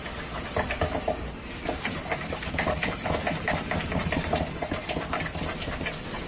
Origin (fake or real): fake